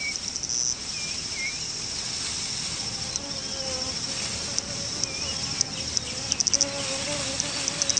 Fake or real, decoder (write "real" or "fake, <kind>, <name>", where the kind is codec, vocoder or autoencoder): real